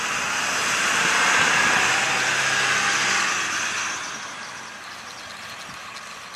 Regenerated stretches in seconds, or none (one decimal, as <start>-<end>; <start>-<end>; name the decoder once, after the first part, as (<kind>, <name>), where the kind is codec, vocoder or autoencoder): 0.6-1.8 (vocoder, BigVGAN v2)